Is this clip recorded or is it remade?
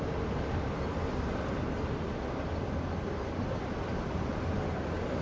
recorded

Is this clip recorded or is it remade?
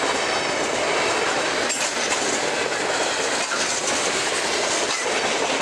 recorded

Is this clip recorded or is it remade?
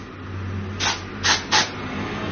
recorded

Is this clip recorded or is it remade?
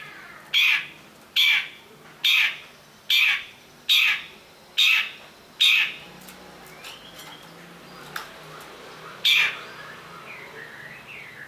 recorded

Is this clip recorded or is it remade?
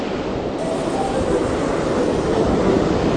recorded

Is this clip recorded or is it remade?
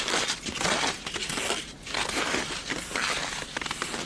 recorded